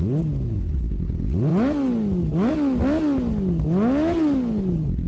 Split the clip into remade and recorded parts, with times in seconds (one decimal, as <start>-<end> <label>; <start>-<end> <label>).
0.0-5.1 recorded